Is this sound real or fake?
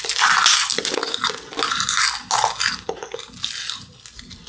real